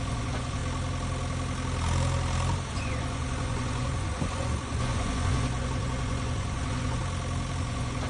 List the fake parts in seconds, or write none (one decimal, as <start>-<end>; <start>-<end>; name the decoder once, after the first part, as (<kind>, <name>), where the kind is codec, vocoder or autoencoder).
0.0-0.6 (vocoder, Vocos); 2.7-7.0; 7.6-8.1